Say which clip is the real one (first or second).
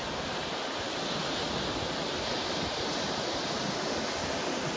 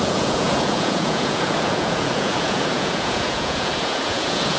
first